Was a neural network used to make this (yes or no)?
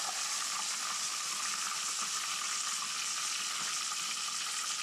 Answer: no